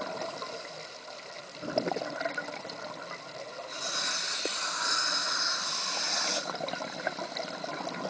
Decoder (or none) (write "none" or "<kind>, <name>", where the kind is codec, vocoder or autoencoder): none